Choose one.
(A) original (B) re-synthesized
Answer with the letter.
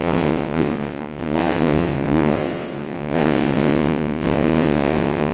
B